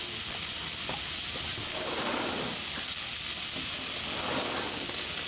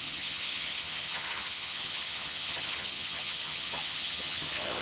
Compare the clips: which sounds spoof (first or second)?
second